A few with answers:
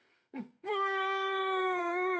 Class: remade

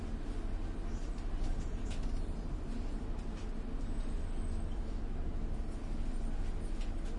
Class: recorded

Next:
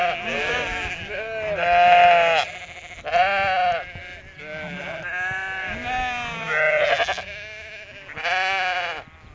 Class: recorded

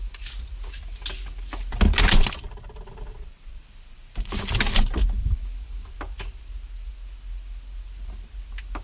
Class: recorded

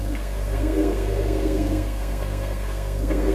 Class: remade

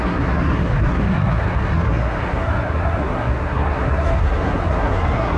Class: remade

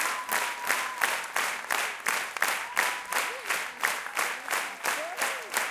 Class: recorded